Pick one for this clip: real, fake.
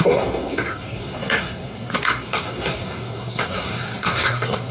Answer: fake